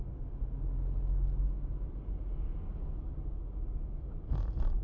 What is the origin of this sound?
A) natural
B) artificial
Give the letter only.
A